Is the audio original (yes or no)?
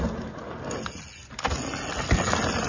yes